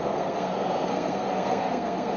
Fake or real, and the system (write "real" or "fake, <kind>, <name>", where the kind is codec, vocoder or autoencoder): fake, codec, SNAC